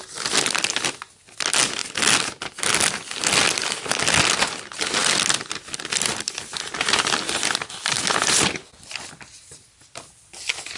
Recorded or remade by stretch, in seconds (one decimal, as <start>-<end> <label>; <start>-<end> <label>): 0.0-10.8 recorded